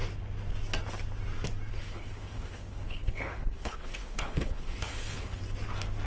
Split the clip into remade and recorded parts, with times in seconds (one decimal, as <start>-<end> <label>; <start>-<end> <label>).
0.0-1.7 recorded; 1.7-5.4 remade; 5.4-6.1 recorded

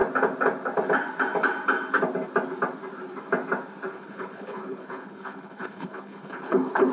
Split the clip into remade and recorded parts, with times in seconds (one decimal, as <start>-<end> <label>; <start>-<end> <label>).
0.0-3.9 recorded; 3.9-6.9 remade